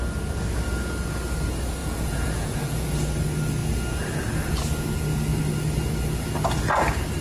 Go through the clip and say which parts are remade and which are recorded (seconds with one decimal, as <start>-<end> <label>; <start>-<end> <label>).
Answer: 0.0-1.8 recorded; 1.8-3.0 remade; 3.0-7.2 recorded